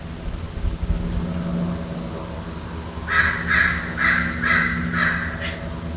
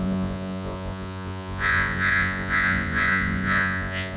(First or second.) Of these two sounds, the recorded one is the first